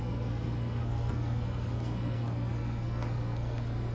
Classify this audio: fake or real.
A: fake